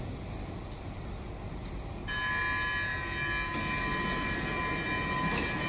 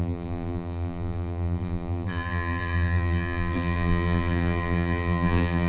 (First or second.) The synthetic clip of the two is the second